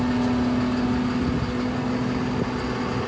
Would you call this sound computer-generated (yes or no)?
no